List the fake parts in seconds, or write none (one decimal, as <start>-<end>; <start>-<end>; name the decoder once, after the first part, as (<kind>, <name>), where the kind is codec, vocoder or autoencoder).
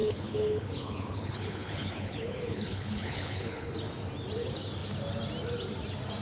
0.0-3.7 (codec, HILCodec)